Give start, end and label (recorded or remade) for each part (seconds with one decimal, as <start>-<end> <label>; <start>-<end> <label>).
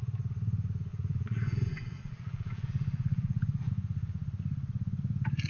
0.0-0.9 recorded; 0.9-3.7 remade; 3.7-5.5 recorded